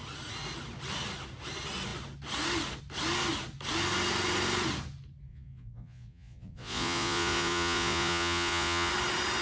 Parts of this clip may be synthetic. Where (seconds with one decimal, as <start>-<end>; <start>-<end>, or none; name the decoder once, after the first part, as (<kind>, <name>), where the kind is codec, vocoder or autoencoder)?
5.3-8.9 (vocoder, Vocos)